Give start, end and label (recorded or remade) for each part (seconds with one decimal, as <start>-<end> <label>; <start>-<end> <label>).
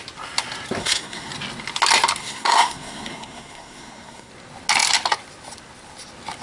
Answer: 0.0-0.8 recorded; 0.8-1.3 remade; 1.3-2.2 recorded; 2.2-4.3 remade; 4.3-6.4 recorded